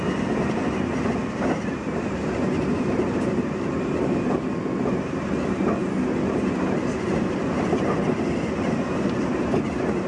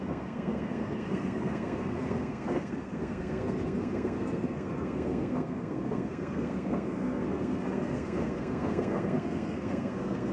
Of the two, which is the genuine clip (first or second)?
first